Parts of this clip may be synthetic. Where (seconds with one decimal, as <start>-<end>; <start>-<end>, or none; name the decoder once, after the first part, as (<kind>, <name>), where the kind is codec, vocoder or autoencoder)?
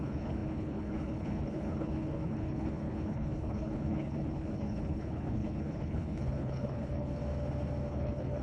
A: 0.0-7.2 (codec, HILCodec); 7.9-8.4